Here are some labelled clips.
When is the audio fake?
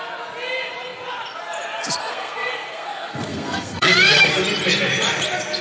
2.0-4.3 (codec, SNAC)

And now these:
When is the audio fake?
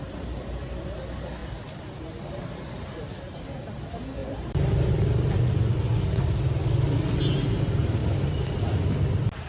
4.2-4.9 (vocoder, BigVGAN v2)